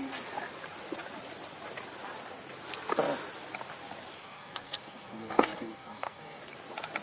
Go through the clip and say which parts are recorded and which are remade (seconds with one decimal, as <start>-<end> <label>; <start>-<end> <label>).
0.0-4.2 recorded; 4.2-6.4 remade; 6.4-7.0 recorded